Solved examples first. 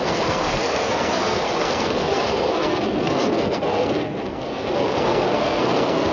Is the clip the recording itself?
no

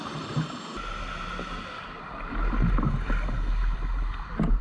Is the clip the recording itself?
yes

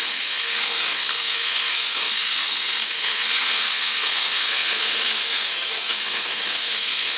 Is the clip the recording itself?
no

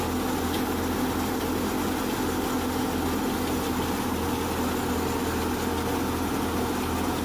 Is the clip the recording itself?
yes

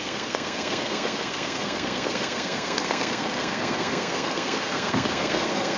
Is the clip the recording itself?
no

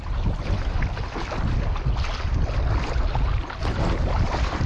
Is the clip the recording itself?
yes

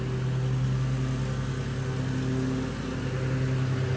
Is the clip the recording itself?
yes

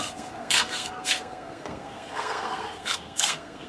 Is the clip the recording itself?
no